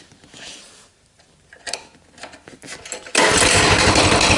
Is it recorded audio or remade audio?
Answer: recorded